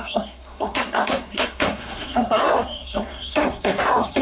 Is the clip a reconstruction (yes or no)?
yes